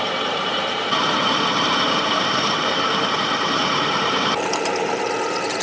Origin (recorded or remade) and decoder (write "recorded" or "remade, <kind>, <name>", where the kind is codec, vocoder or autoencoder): remade, vocoder, BigVGAN v2